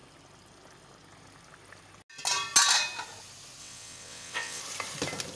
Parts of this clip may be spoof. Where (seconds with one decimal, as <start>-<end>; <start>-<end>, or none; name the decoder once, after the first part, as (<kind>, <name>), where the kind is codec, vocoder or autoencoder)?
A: 3.6-4.6 (vocoder, WaveNeXt)